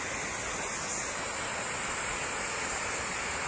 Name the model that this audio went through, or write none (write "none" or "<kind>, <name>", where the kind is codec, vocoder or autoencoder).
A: none